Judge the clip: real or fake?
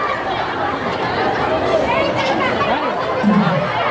real